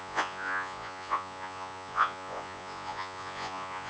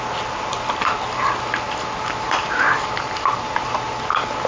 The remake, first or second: first